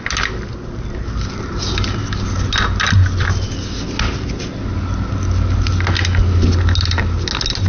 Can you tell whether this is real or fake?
real